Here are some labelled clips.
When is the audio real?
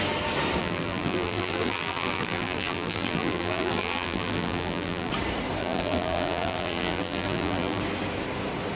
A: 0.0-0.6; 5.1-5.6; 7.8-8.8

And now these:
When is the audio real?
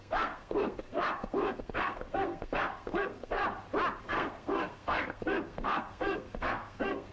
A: 3.4-4.0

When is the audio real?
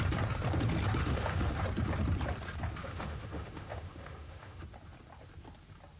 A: 0.0-1.0; 1.6-2.8; 4.6-6.0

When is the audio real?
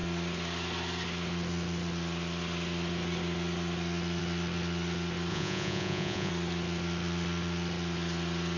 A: 0.0-5.3; 6.3-8.6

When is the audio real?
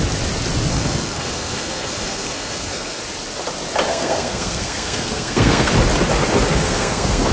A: 0.0-0.7; 3.0-3.9; 5.7-6.5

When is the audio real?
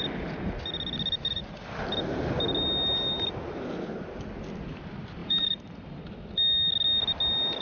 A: 0.0-5.2; 6.0-7.6